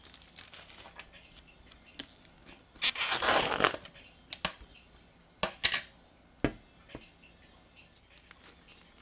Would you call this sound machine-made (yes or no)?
no